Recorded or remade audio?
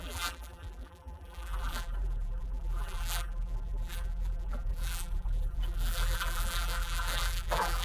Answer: remade